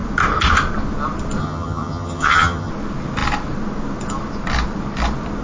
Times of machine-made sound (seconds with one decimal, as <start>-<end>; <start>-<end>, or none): 1.4-2.7